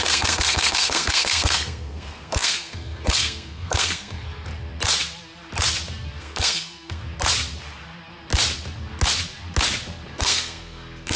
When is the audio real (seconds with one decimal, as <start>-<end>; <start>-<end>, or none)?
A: 4.5-6.2; 7.0-10.1